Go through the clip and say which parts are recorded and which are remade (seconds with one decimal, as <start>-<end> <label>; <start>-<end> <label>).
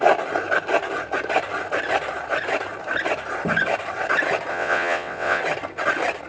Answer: 0.0-4.5 recorded; 4.5-5.4 remade; 5.4-6.3 recorded